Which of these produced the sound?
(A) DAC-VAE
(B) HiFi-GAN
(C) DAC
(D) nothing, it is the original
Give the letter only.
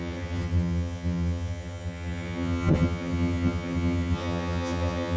B